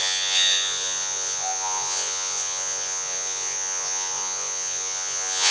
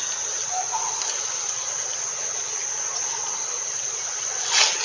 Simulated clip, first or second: first